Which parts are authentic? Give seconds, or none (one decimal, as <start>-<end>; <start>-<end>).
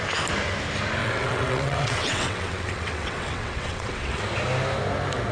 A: 0.0-1.0; 4.2-5.3